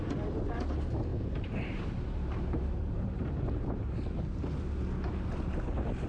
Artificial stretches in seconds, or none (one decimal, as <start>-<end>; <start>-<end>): 1.1-3.3